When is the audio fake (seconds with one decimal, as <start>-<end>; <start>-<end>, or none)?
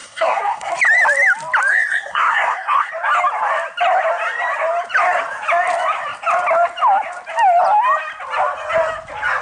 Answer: 0.0-0.7; 1.7-2.9